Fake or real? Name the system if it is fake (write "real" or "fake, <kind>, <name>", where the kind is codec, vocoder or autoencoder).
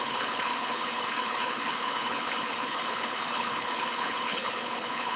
fake, codec, HILCodec